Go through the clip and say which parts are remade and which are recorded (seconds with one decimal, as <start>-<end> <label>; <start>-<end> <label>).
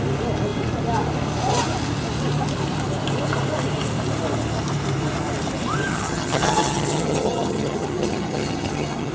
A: 0.0-5.9 recorded; 5.9-9.1 remade